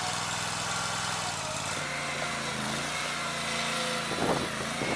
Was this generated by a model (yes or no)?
no